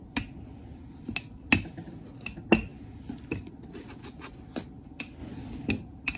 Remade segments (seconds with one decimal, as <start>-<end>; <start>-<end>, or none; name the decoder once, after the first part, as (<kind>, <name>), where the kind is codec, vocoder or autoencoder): none